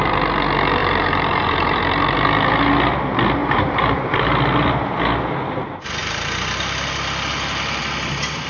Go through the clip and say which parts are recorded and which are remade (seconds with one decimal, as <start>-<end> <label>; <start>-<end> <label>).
0.0-0.8 recorded; 0.8-1.8 remade; 1.8-3.4 recorded; 3.4-4.3 remade; 4.3-8.5 recorded